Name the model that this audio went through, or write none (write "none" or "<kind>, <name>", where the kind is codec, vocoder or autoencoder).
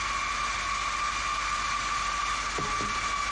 none